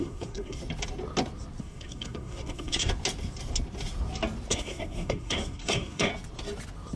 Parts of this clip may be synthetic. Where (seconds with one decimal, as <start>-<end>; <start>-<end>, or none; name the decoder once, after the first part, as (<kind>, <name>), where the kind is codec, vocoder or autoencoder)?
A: 0.0-0.6 (codec, SNAC); 1.6-2.9; 4.5-6.1